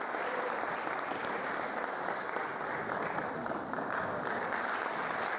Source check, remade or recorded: remade